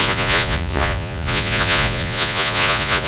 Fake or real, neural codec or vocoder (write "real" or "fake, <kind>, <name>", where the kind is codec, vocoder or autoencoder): fake, vocoder, Vocos